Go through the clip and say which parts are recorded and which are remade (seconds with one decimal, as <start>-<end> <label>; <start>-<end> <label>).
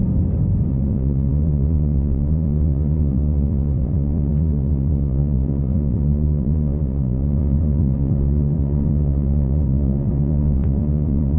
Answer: 0.0-0.7 recorded; 0.7-11.4 remade